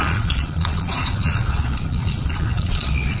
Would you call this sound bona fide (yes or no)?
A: no